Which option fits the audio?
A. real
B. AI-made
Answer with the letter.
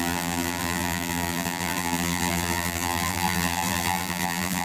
B